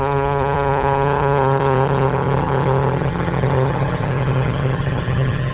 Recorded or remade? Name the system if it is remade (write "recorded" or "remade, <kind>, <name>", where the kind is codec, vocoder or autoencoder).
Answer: remade, vocoder, HiFi-GAN